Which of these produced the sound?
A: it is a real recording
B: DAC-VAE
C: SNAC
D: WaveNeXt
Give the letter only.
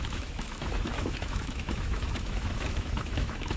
B